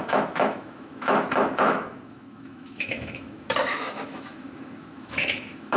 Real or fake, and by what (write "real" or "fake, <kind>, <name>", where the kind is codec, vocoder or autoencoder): fake, autoencoder, DAC-VAE